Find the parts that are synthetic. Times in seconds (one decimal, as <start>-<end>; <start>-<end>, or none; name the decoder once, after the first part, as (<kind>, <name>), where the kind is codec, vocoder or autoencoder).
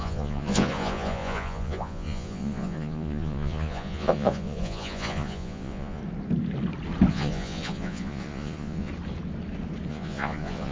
0.0-6.0 (vocoder, Vocos); 7.1-8.9; 9.9-10.7